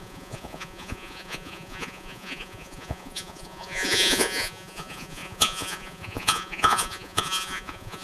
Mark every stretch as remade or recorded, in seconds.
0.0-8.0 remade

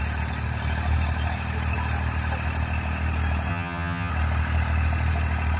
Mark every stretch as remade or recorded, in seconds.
0.0-3.5 recorded; 3.5-4.1 remade; 4.1-5.6 recorded

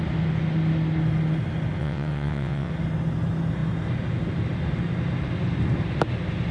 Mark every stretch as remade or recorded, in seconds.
0.0-1.8 recorded; 1.8-2.7 remade; 2.7-6.5 recorded